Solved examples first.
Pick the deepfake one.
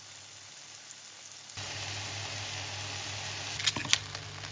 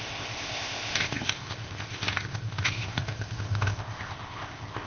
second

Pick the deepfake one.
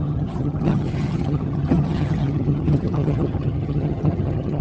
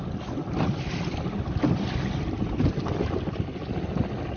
first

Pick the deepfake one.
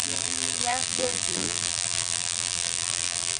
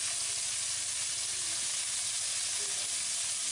first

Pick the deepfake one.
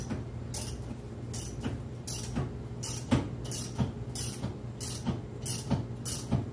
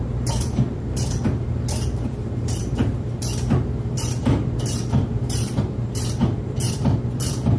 second